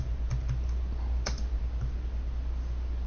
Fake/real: real